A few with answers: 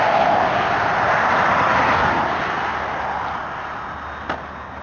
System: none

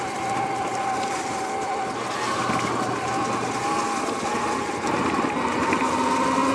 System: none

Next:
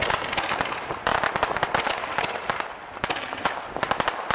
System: none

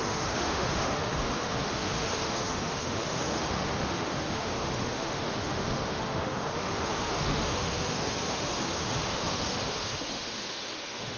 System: autoencoder, DAC-VAE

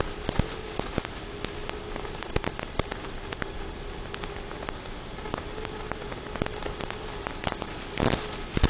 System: none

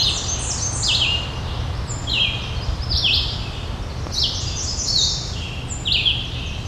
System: none